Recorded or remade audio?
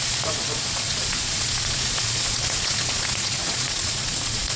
remade